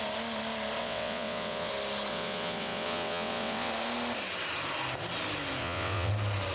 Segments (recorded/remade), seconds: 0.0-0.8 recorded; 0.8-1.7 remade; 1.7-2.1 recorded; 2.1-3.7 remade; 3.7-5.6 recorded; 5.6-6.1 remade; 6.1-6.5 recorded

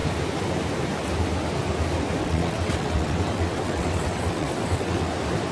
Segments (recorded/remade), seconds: 0.0-2.2 recorded; 2.2-5.1 remade; 5.1-5.5 recorded

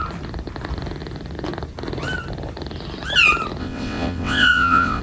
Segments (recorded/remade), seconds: 0.0-3.6 recorded; 3.6-5.0 remade